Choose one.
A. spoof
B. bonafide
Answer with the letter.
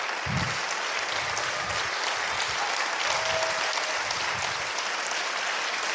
B